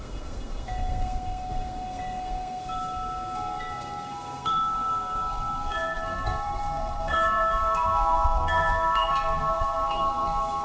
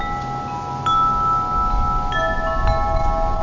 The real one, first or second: second